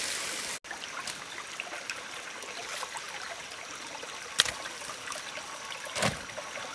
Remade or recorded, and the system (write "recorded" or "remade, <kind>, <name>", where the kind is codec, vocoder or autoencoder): recorded